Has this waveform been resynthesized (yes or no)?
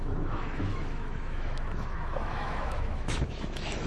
yes